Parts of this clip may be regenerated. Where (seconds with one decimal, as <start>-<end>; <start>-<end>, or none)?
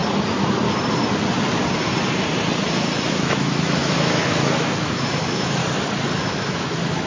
3.1-5.6; 6.2-7.1